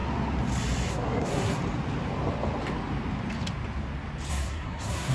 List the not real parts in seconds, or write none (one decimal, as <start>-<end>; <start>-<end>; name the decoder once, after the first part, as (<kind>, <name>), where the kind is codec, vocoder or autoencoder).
0.9-1.6 (codec, SNAC); 4.3-5.1